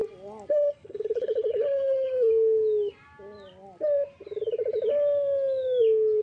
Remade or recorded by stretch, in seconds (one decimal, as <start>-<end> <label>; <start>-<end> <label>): 0.0-0.5 recorded; 0.5-2.3 remade; 2.3-6.2 recorded